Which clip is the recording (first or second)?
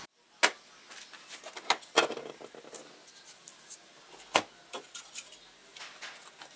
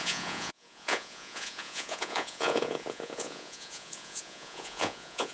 first